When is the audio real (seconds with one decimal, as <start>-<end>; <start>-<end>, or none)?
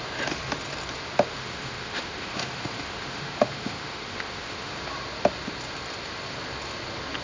0.0-1.4; 4.7-7.2